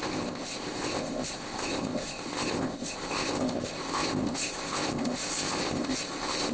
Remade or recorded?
remade